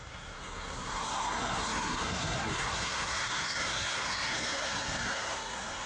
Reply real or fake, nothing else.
fake